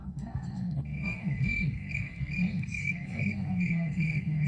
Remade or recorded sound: remade